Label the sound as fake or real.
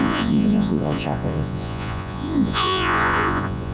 fake